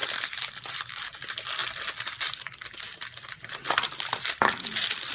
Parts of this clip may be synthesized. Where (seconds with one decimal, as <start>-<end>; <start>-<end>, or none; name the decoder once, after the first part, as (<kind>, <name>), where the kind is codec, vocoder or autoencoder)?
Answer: none